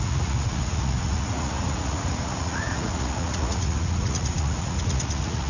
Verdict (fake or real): fake